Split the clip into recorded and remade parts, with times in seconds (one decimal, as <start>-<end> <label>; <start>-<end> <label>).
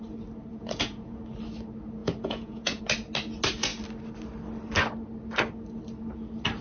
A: 0.0-0.5 recorded; 0.5-1.2 remade; 1.2-2.0 recorded; 2.0-2.8 remade; 2.8-6.6 recorded